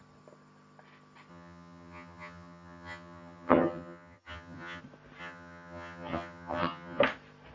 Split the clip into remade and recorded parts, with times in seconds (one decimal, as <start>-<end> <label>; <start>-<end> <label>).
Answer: 0.0-1.3 recorded; 1.3-4.8 remade; 4.8-5.2 recorded; 5.2-7.0 remade; 7.0-7.5 recorded